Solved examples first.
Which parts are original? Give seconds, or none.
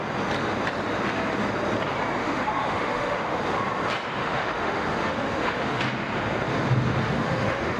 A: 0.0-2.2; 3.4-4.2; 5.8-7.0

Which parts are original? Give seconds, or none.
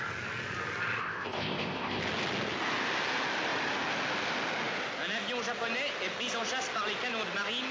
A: 0.0-1.0; 2.0-7.7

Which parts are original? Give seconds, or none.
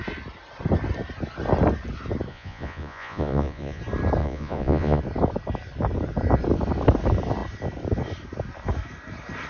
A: 0.0-2.3; 3.8-4.2; 5.0-9.5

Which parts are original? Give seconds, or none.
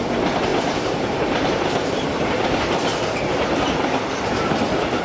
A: 0.0-0.5; 3.5-5.0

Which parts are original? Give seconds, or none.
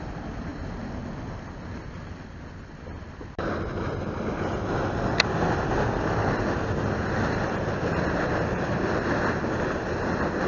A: 0.0-10.5